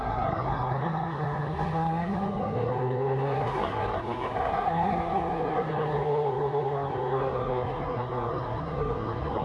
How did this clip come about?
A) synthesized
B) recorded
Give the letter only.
A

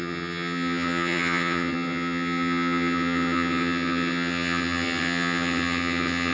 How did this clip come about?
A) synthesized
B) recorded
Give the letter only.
A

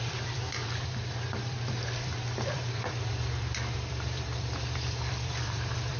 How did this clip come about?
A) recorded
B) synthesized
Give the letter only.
B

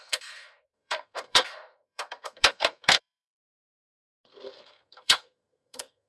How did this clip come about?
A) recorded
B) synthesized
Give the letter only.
B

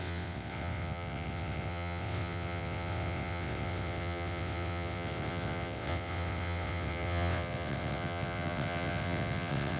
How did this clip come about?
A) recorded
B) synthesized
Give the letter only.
B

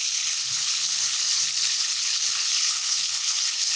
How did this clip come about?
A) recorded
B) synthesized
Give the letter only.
B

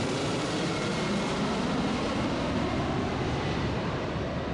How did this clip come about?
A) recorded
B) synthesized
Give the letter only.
A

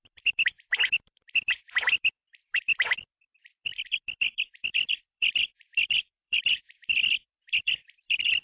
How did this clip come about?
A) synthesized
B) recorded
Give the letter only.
A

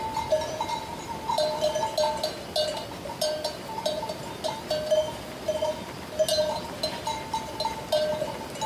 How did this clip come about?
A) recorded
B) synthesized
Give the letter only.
A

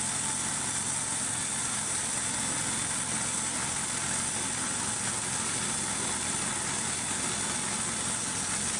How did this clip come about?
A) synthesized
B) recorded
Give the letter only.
B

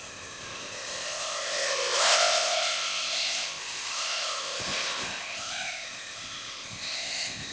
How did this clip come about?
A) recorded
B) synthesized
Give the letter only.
B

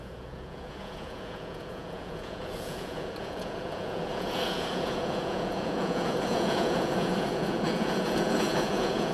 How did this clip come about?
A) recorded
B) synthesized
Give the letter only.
B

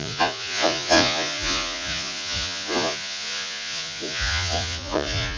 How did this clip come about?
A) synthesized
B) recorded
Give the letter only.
A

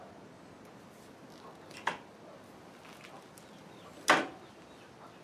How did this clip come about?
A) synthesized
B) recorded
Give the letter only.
B